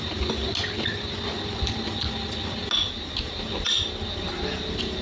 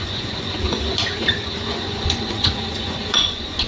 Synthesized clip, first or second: second